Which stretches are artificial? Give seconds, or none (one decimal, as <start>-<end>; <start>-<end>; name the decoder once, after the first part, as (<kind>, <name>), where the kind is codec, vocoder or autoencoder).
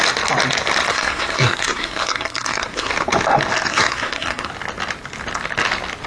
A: 0.9-2.9 (codec, SNAC); 3.7-4.5